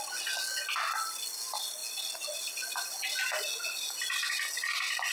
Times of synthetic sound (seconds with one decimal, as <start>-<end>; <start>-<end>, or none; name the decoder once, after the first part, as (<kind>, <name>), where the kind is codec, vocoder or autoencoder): none